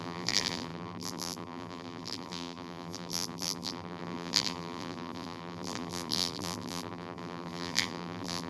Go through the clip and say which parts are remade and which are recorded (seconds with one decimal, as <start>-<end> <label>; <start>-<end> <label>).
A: 0.0-8.5 remade